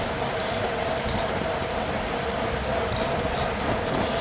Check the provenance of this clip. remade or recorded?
recorded